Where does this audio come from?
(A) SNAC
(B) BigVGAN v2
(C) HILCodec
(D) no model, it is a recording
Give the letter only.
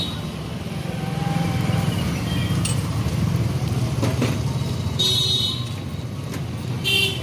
D